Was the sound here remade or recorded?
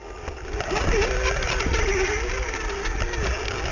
recorded